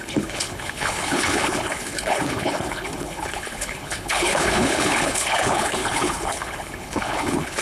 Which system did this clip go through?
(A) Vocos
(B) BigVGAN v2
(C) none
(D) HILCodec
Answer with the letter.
D